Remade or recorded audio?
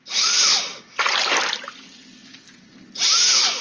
recorded